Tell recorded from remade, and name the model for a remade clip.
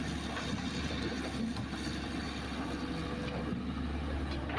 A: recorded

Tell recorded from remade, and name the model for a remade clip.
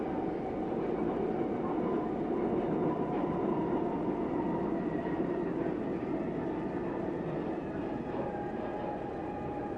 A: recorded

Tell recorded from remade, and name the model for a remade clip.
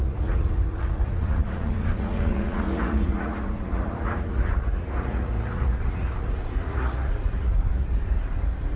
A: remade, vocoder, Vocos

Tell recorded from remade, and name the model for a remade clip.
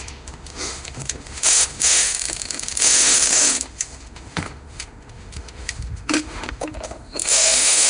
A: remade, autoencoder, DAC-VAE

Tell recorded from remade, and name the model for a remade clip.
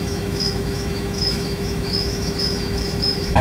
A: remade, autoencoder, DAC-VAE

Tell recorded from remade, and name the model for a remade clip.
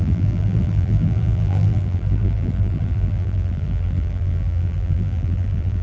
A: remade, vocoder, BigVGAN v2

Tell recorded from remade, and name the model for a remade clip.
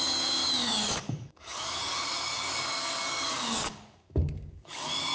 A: remade, codec, DAC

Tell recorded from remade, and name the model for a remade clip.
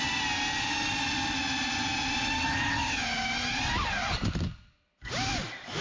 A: recorded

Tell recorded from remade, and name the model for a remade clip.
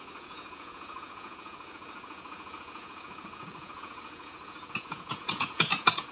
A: remade, vocoder, Vocos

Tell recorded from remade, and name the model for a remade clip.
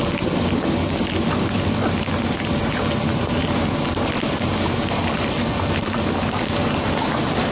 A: recorded